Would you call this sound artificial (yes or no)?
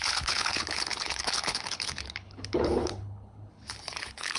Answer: yes